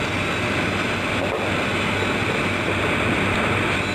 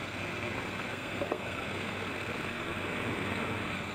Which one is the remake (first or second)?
second